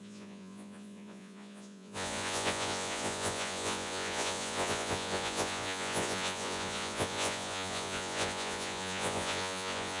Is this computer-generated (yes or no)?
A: yes